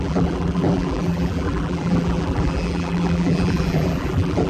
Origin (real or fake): fake